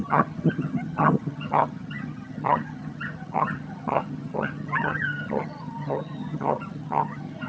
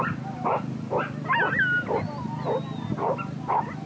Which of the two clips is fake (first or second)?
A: first